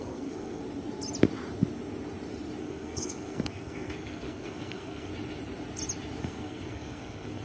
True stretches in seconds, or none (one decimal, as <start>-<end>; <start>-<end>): 0.6-2.6; 5.1-6.2